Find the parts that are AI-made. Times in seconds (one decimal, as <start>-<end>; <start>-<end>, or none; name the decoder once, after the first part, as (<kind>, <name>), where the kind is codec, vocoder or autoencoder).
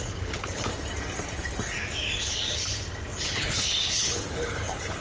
0.0-0.7 (codec, HILCodec); 3.2-5.0